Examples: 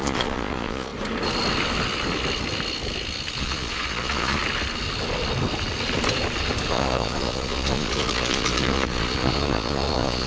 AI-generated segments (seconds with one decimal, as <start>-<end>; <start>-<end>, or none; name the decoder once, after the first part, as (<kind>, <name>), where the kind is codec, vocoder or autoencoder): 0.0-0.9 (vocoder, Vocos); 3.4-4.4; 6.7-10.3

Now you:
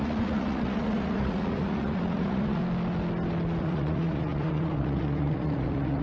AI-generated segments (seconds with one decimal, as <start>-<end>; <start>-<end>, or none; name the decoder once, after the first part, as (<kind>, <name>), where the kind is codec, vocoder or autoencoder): 0.0-2.6 (vocoder, Vocos); 3.6-6.0

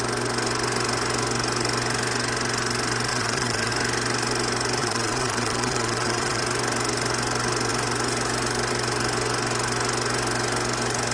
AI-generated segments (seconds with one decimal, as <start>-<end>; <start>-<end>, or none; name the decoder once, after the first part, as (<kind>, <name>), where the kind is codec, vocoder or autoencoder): 3.1-3.7 (vocoder, Vocos); 4.8-6.4